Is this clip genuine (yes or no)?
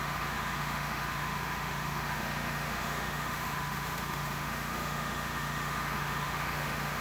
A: no